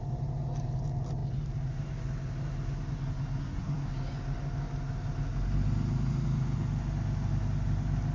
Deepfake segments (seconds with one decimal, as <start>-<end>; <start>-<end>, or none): 3.4-3.9